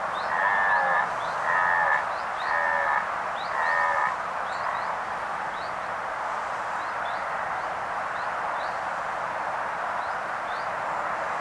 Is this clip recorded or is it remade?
recorded